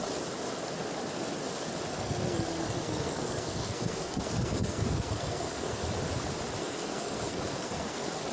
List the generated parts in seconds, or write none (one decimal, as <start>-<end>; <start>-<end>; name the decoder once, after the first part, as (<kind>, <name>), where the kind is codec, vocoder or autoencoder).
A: 1.9-5.8 (codec, SNAC); 6.6-8.3